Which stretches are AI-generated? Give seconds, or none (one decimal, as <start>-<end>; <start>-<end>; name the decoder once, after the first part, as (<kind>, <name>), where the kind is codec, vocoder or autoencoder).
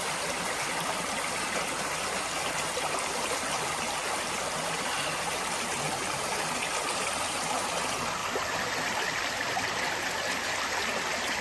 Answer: none